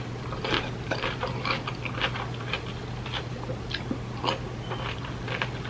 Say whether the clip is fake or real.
real